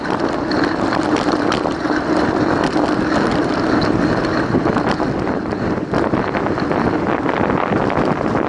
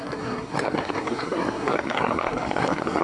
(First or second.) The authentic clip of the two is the first